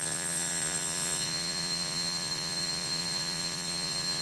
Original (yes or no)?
no